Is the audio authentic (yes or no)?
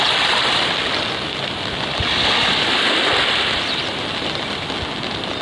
yes